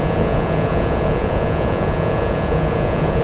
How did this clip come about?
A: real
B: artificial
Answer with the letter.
B